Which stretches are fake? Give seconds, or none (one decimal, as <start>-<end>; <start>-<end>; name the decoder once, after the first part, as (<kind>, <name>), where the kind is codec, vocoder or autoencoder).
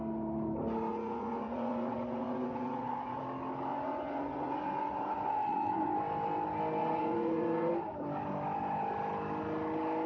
0.9-3.2 (vocoder, Vocos); 3.7-5.9; 6.8-7.7